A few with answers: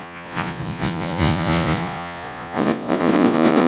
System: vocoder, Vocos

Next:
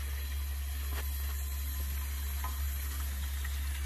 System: none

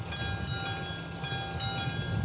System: none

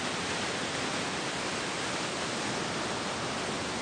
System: none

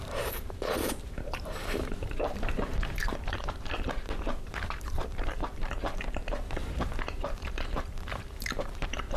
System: vocoder, BigVGAN v2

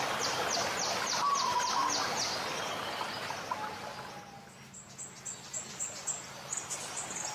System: none